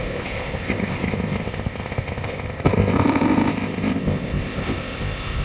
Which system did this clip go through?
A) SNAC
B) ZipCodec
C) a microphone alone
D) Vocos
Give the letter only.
B